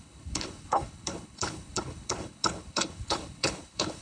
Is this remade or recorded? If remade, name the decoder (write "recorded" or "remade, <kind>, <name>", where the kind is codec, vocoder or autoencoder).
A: remade, codec, HILCodec